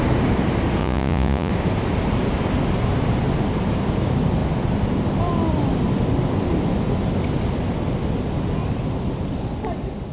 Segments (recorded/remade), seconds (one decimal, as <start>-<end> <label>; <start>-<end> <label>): 0.0-0.8 recorded; 0.8-1.5 remade; 1.5-10.1 recorded